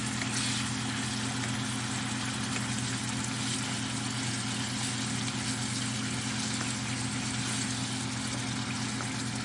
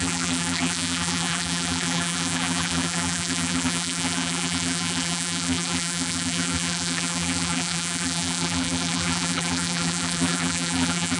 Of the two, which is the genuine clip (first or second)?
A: first